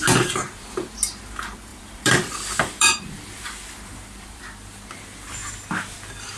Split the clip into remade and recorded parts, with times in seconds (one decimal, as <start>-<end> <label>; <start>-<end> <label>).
0.0-1.7 recorded; 1.7-4.4 remade; 4.4-6.4 recorded